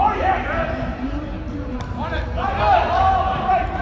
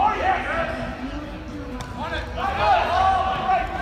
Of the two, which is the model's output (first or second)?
first